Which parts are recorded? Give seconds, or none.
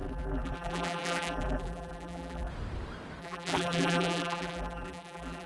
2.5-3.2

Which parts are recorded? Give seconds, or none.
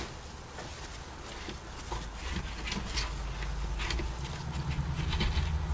0.0-5.7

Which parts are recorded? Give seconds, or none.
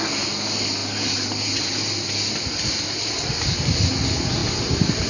0.0-4.4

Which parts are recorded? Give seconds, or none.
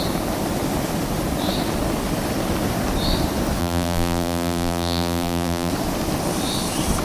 0.0-3.6; 5.7-7.0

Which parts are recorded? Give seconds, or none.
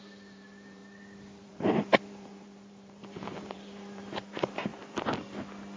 0.8-1.4; 4.7-5.8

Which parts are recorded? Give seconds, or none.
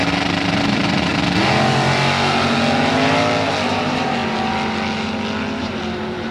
0.0-0.6; 1.1-3.7; 4.2-5.6